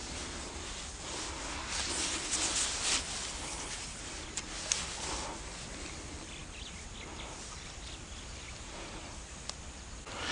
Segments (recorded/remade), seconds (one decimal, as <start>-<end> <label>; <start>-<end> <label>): 0.0-10.3 recorded